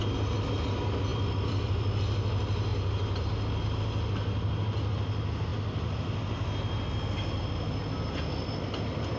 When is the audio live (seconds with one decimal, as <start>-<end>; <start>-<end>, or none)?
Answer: 0.0-2.7; 3.3-9.2